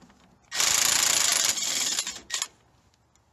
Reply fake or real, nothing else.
real